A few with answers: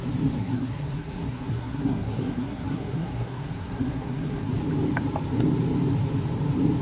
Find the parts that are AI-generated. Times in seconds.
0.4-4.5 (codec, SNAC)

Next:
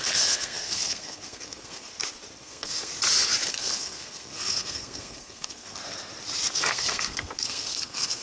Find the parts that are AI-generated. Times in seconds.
0.0-1.9 (codec, SNAC); 2.4-2.9; 3.5-5.8; 6.5-8.2

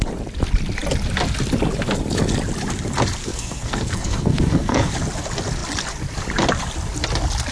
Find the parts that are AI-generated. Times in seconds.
3.2-4.9 (codec, SNAC)

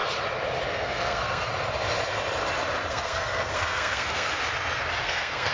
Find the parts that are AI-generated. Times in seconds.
0.7-1.5 (codec, SNAC); 2.9-4.3; 5.0-5.5